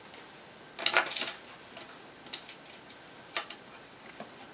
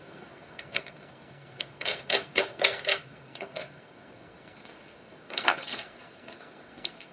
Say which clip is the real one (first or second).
first